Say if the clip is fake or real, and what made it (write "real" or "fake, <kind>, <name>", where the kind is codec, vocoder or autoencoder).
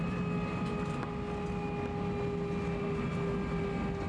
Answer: real